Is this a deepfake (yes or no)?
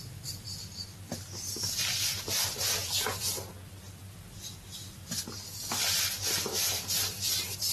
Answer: no